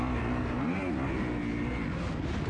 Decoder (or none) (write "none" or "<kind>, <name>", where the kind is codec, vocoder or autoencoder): none